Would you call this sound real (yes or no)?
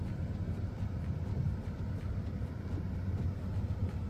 yes